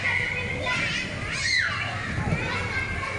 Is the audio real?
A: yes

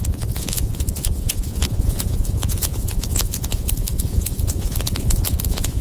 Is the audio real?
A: no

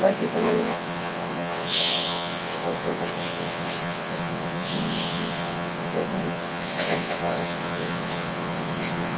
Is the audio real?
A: no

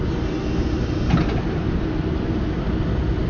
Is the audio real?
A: yes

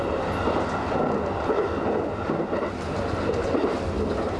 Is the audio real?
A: yes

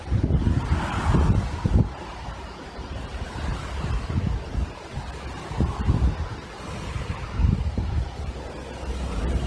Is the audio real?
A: yes